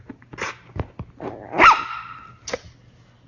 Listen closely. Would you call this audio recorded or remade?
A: recorded